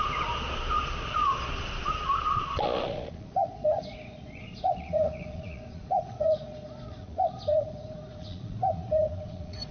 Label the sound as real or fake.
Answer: fake